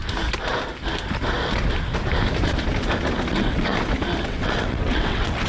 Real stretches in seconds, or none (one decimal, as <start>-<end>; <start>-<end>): 0.0-3.3; 3.7-4.2